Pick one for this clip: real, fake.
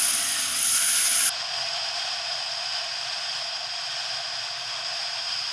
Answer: real